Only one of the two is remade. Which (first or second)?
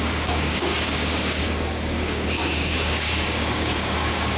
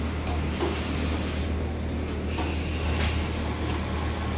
first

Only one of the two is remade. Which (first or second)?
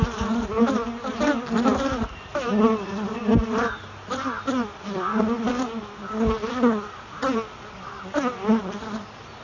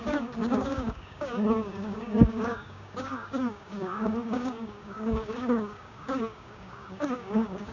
second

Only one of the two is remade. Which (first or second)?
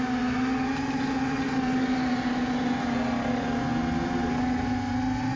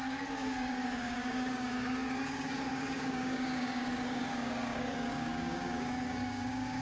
second